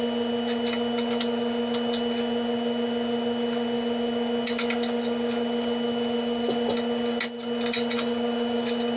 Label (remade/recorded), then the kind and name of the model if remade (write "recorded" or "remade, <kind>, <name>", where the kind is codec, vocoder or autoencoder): recorded